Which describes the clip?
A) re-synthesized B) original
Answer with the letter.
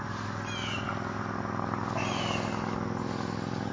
B